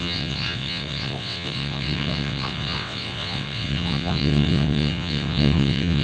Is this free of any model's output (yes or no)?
no